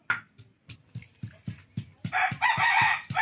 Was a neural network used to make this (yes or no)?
no